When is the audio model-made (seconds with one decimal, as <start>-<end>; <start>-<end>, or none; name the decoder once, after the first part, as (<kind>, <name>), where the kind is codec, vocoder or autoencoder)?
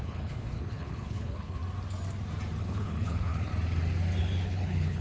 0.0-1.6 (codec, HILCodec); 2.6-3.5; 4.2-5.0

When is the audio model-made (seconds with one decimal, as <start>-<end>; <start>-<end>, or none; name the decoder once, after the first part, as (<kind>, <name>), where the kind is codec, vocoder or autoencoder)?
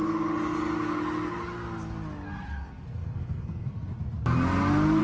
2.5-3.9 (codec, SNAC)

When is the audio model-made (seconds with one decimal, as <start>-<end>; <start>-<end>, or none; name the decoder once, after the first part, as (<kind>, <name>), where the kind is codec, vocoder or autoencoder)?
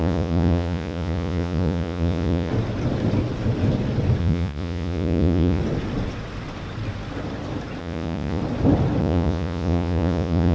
0.0-2.5 (vocoder, Vocos); 4.2-5.6; 7.8-8.4; 9.0-10.5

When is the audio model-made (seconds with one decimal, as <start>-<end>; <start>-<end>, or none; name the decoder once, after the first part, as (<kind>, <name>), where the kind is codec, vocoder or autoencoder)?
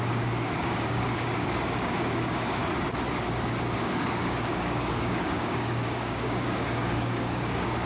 0.0-2.6 (codec, DAC); 3.8-7.9